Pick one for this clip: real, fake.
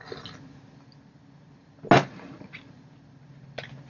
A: real